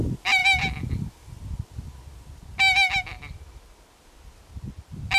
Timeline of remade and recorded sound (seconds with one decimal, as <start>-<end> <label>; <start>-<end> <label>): 0.0-5.2 recorded